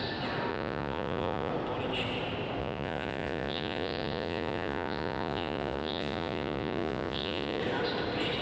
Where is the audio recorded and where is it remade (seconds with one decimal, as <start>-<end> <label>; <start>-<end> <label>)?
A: 0.0-0.5 recorded; 0.5-1.5 remade; 1.5-2.6 recorded; 2.6-7.6 remade; 7.6-8.4 recorded